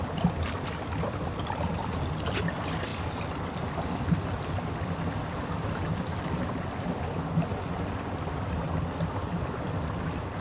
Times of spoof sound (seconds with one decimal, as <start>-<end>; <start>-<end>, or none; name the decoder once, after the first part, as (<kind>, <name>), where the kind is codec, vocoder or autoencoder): none